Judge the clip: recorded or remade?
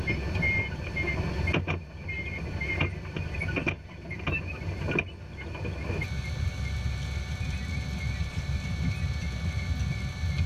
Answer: recorded